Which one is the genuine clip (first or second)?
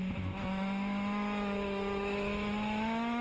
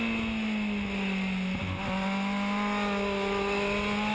second